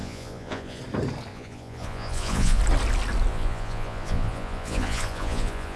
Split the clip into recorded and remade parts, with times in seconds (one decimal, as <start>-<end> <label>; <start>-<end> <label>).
0.0-0.8 remade; 0.8-1.3 recorded; 1.3-2.6 remade; 2.6-3.3 recorded; 3.3-5.8 remade